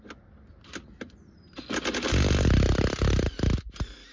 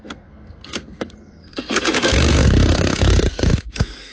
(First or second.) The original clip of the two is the first